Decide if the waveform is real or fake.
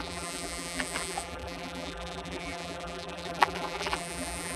fake